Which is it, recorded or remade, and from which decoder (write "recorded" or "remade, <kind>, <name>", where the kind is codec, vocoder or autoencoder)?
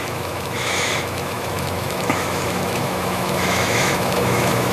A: remade, autoencoder, DAC-VAE